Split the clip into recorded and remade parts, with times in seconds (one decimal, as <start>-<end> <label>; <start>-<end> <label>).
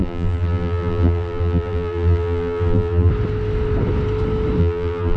0.0-3.1 remade; 3.1-4.6 recorded; 4.6-5.2 remade